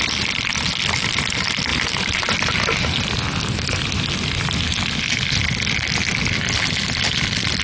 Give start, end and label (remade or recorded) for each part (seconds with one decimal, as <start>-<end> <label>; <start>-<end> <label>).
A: 0.0-7.6 recorded